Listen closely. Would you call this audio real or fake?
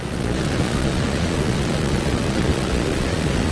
fake